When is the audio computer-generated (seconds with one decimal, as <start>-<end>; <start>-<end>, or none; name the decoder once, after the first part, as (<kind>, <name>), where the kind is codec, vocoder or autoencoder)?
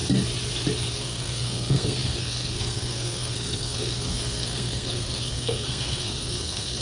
0.9-6.8 (codec, SNAC)